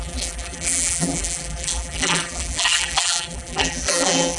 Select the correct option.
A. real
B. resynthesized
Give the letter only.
B